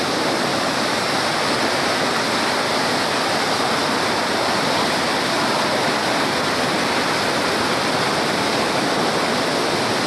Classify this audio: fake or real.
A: real